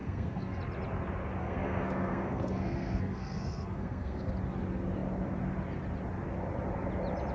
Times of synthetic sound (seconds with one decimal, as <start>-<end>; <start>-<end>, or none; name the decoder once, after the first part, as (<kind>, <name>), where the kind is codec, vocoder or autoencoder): 0.0-0.6 (codec, SNAC); 1.4-4.3